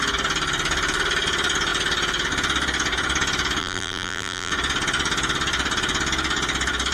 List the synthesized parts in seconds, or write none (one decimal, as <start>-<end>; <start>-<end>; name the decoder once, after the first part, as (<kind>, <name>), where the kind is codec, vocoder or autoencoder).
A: 3.6-4.5 (vocoder, BigVGAN v2)